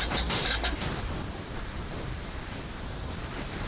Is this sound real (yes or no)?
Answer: no